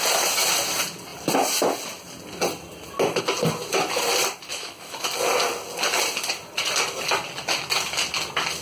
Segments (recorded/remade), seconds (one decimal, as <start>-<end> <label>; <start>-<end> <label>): 0.0-4.5 recorded; 4.5-5.1 remade; 5.1-8.6 recorded